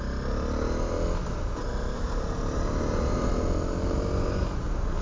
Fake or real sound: real